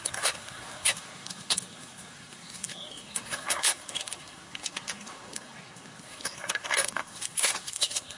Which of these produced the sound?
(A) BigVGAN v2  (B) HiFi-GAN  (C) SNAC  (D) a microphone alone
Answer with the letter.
C